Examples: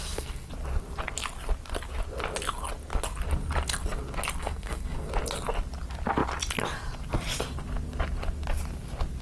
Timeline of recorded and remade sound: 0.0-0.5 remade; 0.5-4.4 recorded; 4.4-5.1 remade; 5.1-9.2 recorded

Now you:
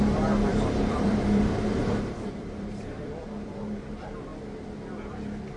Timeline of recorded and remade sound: 0.0-0.5 recorded; 0.5-3.9 remade; 3.9-5.6 recorded

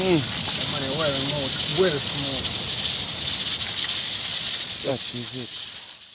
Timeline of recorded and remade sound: 0.0-4.3 recorded; 4.3-4.9 remade; 4.9-6.1 recorded

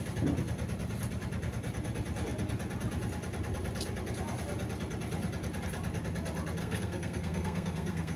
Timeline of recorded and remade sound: 0.0-6.6 recorded; 6.6-8.2 remade